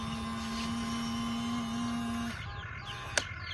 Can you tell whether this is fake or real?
real